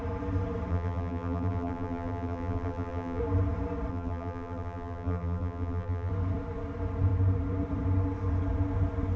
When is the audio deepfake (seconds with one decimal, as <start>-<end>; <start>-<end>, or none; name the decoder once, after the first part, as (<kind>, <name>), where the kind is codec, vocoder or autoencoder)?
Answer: 0.7-3.2 (vocoder, BigVGAN v2); 3.9-6.1